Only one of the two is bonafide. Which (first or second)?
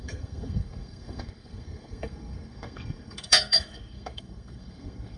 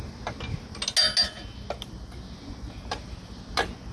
second